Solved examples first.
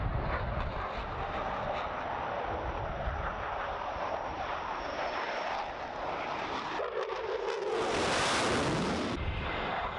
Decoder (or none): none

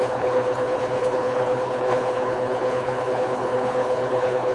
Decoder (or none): codec, HILCodec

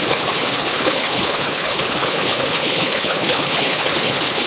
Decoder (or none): codec, HILCodec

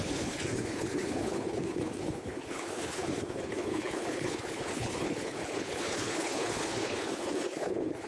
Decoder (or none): codec, HILCodec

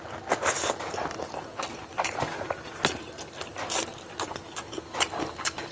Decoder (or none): none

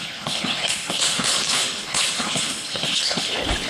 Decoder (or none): codec, HILCodec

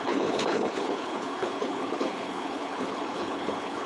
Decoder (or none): codec, HILCodec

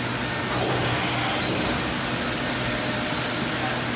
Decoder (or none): none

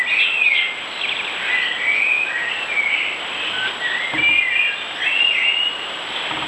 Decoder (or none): none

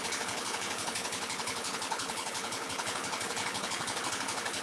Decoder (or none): codec, HILCodec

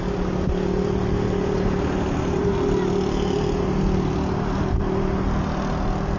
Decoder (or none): none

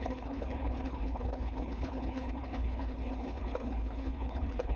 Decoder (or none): codec, HILCodec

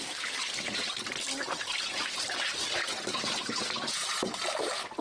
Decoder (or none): none